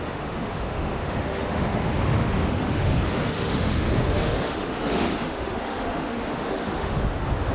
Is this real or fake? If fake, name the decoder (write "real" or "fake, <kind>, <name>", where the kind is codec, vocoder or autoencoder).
fake, autoencoder, DAC-VAE